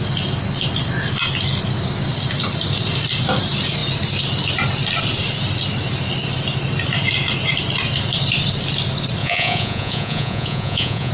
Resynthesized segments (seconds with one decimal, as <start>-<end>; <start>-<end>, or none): 9.2-11.1